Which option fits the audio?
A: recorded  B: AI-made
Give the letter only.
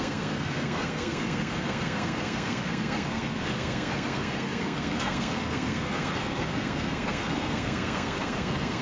B